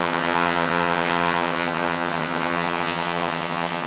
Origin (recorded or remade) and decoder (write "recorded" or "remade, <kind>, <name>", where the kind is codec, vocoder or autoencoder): remade, vocoder, HiFi-GAN